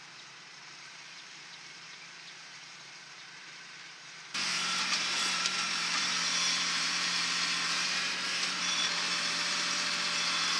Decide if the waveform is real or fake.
fake